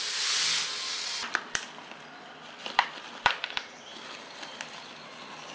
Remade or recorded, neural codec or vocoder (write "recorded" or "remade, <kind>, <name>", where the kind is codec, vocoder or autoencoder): recorded